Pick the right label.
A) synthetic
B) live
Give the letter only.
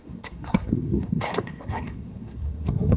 A